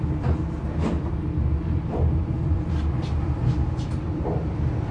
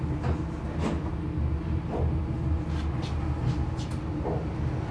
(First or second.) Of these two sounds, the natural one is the second